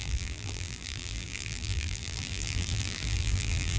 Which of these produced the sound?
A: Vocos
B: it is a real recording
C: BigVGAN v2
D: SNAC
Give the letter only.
C